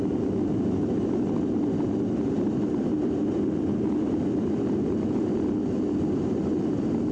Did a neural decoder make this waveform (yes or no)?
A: no